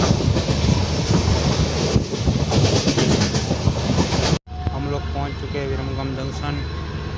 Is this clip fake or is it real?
real